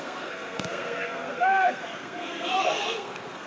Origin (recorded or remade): remade